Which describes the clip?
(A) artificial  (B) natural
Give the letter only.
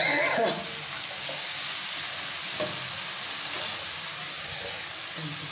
B